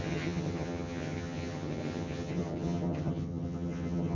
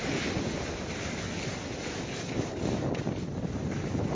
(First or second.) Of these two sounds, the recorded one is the second